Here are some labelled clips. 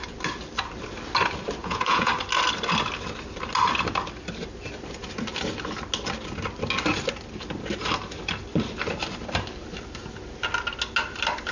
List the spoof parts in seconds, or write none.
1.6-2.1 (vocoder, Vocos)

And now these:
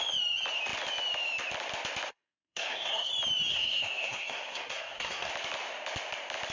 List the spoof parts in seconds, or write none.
2.1-3.1 (codec, SNAC); 3.5-5.3

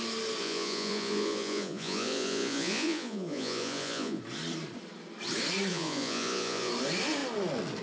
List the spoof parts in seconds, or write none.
0.4-4.2 (vocoder, Vocos); 5.7-6.7

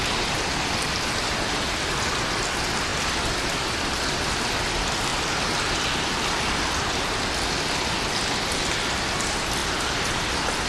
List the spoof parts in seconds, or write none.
none